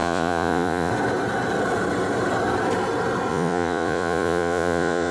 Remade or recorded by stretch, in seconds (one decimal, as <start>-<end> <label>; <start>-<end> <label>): 0.0-0.9 remade; 0.9-3.3 recorded; 3.3-5.1 remade

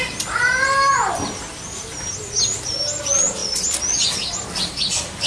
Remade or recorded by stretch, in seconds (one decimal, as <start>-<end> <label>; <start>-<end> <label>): 0.0-5.3 recorded

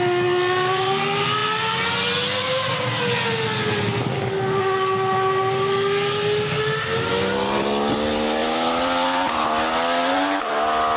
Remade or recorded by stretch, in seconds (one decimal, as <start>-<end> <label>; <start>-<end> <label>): 0.0-8.4 recorded; 8.4-9.4 remade; 9.4-11.0 recorded

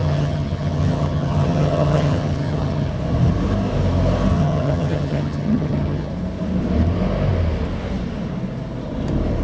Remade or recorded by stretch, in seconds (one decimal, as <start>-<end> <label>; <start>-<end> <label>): 0.0-2.9 remade; 2.9-4.3 recorded; 4.3-6.1 remade; 6.1-9.4 recorded

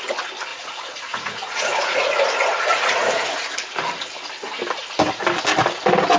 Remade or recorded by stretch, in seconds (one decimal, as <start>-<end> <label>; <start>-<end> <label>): 0.0-0.5 recorded; 0.5-2.2 remade; 2.2-2.7 recorded; 2.7-3.4 remade; 3.4-6.2 recorded